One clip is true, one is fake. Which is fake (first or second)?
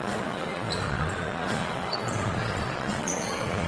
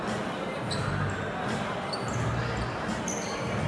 first